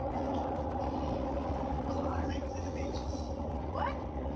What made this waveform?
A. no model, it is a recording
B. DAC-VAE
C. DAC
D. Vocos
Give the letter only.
D